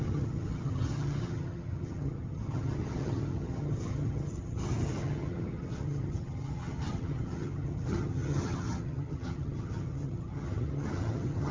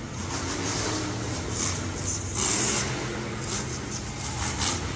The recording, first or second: second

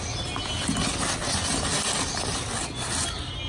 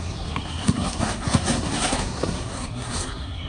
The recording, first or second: first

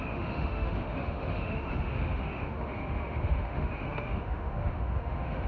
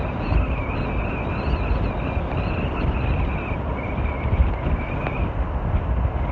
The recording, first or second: second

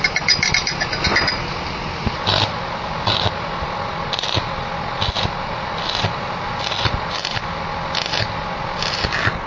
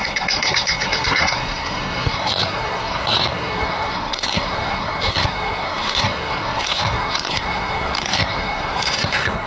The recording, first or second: first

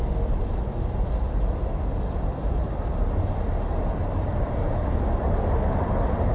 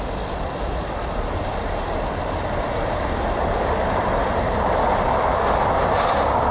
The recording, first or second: first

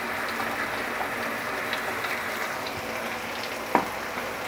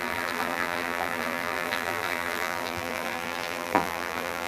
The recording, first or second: first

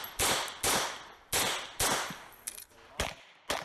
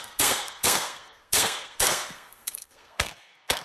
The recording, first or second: first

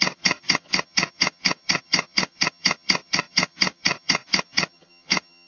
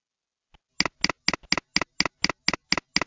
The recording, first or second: second